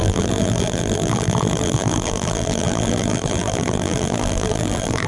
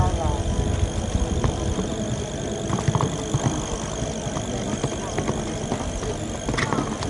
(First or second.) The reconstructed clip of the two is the first